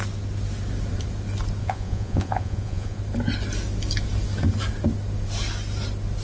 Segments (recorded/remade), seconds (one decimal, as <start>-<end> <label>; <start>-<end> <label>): 0.0-1.6 recorded; 1.6-3.0 remade; 3.0-6.2 recorded